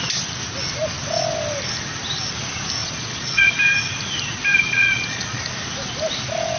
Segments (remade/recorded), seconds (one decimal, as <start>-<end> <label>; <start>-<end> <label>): 0.0-2.8 recorded; 2.8-3.5 remade; 3.5-4.5 recorded; 4.5-5.4 remade; 5.4-6.6 recorded